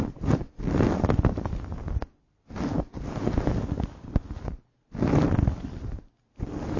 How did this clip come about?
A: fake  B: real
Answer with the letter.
B